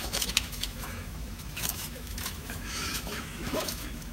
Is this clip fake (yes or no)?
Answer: yes